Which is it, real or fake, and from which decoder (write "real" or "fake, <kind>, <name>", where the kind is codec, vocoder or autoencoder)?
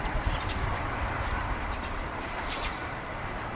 fake, vocoder, BigVGAN v2